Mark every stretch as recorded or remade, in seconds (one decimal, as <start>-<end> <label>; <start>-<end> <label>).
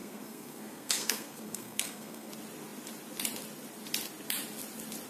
0.0-2.3 remade; 2.3-5.1 recorded